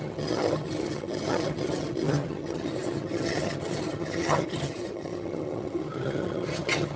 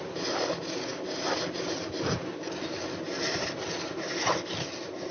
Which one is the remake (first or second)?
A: first